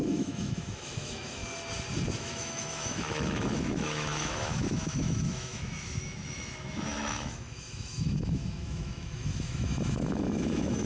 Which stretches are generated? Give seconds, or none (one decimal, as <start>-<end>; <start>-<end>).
0.0-1.4; 2.2-10.9